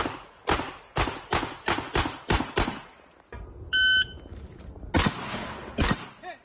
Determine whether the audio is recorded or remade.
recorded